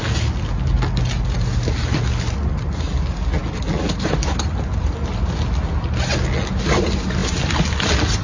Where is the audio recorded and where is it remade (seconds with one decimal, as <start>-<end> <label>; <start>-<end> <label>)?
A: 0.0-8.2 recorded